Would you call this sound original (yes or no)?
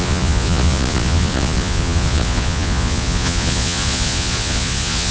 no